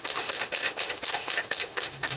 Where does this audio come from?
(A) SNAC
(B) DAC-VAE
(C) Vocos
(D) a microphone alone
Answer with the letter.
B